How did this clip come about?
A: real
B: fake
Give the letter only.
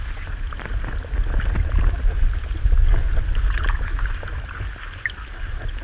A